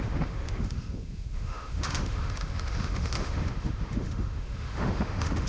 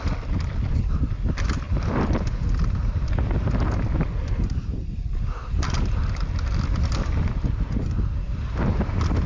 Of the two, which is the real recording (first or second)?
second